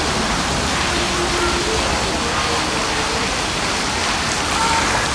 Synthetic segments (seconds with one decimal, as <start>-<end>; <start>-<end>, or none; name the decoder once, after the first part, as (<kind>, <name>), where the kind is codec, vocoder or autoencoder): none